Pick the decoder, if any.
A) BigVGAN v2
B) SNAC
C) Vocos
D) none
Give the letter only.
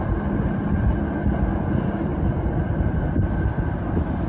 D